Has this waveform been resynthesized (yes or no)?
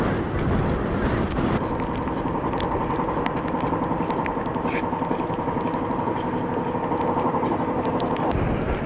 no